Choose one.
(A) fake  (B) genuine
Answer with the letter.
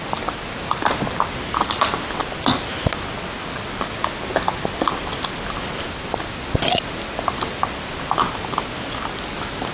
B